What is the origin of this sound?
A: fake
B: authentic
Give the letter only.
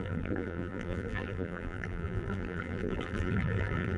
A